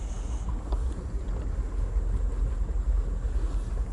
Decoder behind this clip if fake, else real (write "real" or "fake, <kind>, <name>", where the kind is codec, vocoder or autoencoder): real